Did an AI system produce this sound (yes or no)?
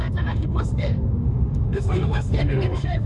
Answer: yes